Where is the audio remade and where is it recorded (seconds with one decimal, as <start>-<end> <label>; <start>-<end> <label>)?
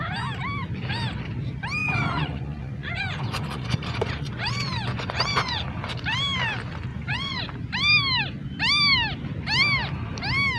0.0-1.8 recorded; 1.8-5.9 remade; 5.9-6.9 recorded; 6.9-7.4 remade; 7.4-10.6 recorded